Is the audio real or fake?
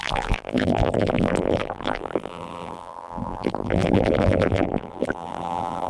fake